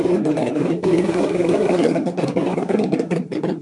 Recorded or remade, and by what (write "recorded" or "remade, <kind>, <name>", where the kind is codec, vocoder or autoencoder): remade, codec, SNAC